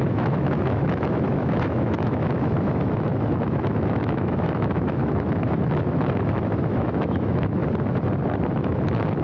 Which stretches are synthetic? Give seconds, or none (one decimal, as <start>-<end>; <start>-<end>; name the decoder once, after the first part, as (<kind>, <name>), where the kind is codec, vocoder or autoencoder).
0.0-7.6 (autoencoder, DAC-VAE); 8.5-9.2